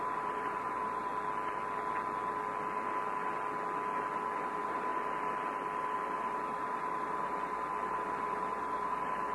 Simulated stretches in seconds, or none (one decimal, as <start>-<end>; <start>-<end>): 0.0-1.1; 4.5-4.9; 5.8-9.3